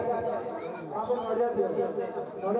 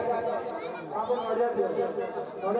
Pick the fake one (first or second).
first